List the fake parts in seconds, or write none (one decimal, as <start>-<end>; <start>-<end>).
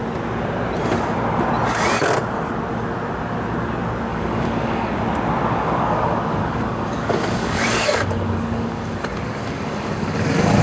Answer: 4.1-4.9; 5.4-10.6